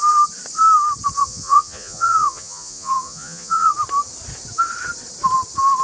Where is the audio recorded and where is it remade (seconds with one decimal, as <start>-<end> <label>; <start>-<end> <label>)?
0.0-1.2 recorded; 1.2-3.7 remade; 3.7-5.8 recorded